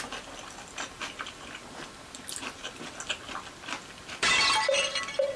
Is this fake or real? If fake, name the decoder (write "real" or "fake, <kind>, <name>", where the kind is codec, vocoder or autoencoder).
real